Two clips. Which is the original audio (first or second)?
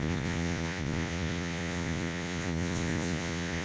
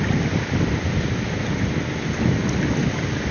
second